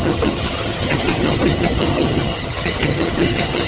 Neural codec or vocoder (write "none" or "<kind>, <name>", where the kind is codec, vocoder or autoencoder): vocoder, HiFi-GAN